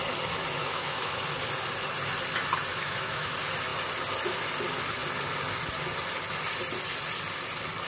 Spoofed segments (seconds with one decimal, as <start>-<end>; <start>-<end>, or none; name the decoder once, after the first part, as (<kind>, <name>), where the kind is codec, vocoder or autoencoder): 0.6-1.2 (autoencoder, DAC-VAE); 2.7-3.3